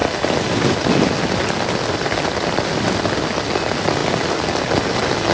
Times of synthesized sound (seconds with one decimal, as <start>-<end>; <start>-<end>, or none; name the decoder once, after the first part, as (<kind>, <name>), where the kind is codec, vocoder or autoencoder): none